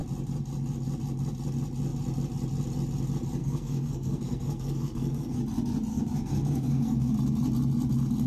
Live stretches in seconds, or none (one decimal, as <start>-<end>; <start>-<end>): 0.0-3.4; 5.4-5.9; 7.1-8.3